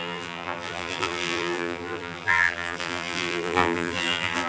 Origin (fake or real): fake